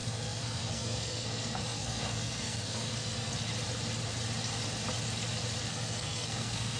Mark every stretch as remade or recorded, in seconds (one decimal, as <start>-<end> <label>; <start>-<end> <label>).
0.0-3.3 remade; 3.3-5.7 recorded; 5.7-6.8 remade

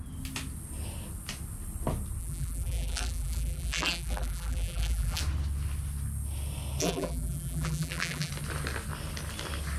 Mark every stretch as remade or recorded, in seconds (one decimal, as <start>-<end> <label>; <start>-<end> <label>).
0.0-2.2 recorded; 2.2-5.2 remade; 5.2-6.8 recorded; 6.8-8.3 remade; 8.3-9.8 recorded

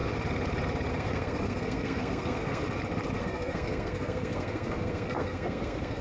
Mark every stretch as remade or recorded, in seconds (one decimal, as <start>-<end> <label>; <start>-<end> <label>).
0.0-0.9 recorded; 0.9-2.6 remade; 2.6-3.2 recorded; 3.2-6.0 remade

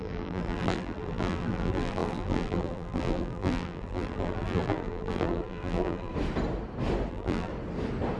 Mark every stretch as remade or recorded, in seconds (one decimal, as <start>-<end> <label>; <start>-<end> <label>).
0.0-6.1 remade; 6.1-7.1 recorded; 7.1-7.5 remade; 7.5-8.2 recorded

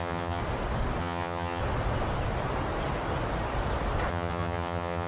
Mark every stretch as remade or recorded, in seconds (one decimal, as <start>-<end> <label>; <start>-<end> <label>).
0.0-0.4 remade; 0.4-1.0 recorded; 1.0-1.6 remade; 1.6-4.1 recorded; 4.1-5.1 remade

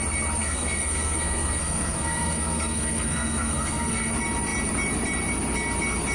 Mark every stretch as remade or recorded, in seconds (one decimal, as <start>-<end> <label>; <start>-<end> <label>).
0.0-0.4 recorded; 0.4-4.1 remade; 4.1-6.1 recorded